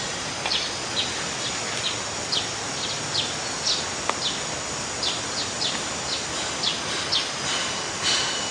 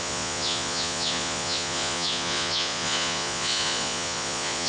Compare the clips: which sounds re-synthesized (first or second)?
second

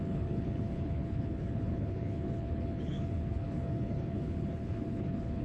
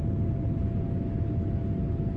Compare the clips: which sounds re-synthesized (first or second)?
first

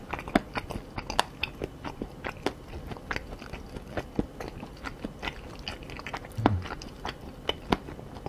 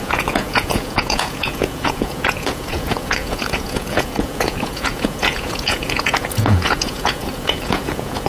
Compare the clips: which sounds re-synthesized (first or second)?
second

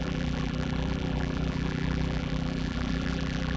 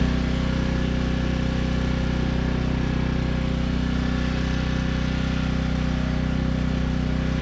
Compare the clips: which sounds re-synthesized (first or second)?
first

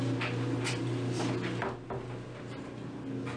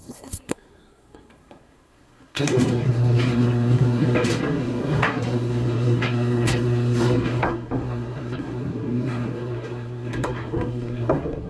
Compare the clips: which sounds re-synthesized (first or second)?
second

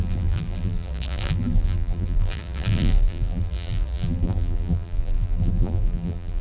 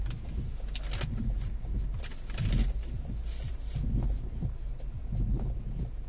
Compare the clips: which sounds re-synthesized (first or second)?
first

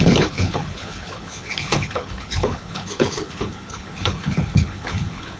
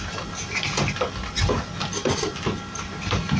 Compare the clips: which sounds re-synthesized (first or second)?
first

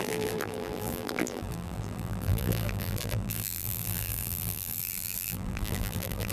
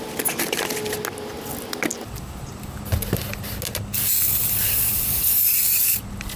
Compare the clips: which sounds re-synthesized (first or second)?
first